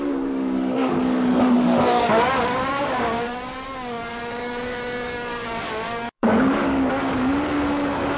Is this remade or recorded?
remade